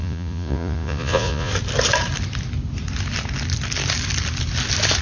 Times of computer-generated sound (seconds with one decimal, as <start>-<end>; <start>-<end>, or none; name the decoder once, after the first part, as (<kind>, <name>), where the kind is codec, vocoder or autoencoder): 0.0-1.5 (vocoder, Vocos)